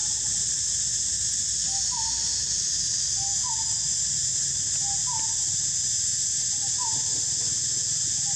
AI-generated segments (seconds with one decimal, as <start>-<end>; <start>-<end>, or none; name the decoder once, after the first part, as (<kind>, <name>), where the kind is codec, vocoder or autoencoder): none

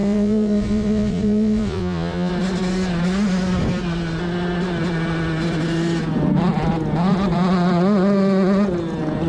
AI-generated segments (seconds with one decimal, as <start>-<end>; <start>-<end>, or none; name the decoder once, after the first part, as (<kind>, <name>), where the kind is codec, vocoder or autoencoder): 0.0-2.3 (vocoder, Vocos)

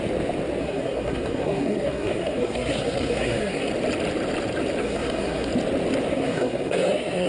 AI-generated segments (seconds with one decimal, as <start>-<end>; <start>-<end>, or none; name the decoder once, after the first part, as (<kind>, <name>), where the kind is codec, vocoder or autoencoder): 0.6-3.7 (codec, SNAC); 4.8-5.5; 6.1-7.3

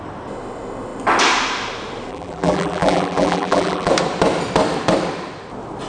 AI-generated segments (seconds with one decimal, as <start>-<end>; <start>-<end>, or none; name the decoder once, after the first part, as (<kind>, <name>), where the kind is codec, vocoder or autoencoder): 2.1-3.9 (vocoder, BigVGAN v2)

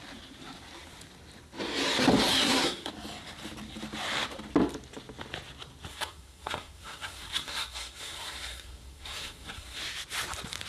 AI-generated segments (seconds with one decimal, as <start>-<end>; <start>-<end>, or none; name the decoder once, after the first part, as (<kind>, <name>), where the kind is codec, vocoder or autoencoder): 2.3-2.9 (codec, SNAC); 5.9-9.8

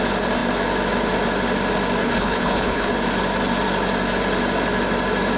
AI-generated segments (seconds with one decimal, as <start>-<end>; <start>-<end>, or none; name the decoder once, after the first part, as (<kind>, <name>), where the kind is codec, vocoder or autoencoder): 2.0-2.9 (codec, HILCodec)

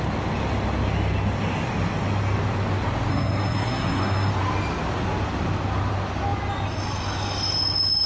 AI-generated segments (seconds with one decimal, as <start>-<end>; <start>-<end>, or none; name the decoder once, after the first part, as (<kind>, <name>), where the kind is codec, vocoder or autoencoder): 3.1-4.3 (codec, SNAC)